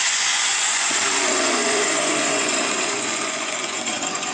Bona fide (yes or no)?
no